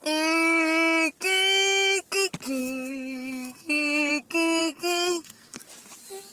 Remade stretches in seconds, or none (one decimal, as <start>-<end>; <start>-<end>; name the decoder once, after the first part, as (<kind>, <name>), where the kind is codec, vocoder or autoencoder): 2.6-4.1 (codec, SNAC); 4.6-5.6